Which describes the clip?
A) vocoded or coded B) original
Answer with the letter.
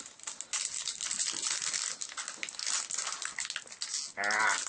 B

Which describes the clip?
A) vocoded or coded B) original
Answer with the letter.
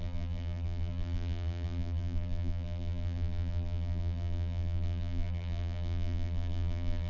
A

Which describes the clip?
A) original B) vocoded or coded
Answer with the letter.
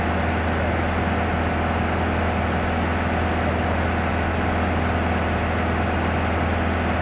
A